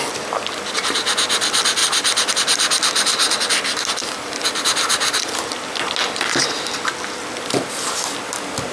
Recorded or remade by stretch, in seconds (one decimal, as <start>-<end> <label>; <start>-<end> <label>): 0.0-1.8 recorded; 1.8-2.3 remade; 2.3-8.7 recorded